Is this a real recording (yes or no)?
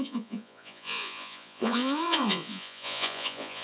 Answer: no